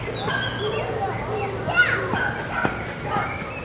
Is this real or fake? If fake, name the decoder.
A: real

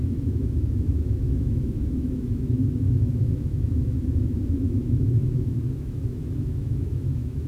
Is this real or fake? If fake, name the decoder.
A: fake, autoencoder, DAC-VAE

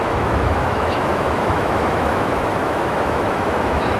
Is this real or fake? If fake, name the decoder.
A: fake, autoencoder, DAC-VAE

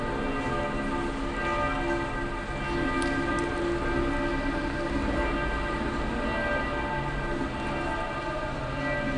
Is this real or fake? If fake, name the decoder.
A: real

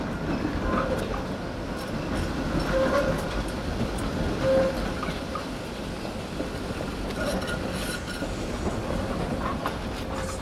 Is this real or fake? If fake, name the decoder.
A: real